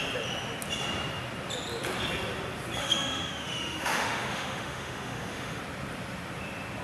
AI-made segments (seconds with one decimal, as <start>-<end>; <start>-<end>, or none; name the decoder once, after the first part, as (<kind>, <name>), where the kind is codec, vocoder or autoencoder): 2.8-5.6 (autoencoder, DAC-VAE)